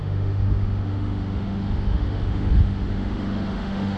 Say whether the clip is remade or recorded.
remade